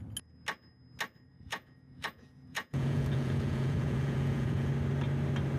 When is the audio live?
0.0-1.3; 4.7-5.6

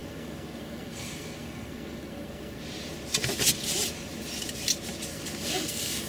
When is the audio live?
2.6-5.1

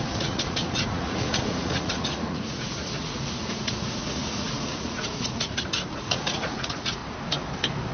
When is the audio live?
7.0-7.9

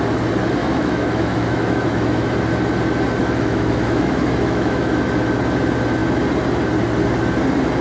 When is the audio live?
0.0-0.6; 2.3-3.2; 5.0-7.8

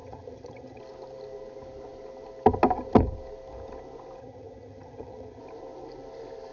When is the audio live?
0.8-4.2; 5.4-6.5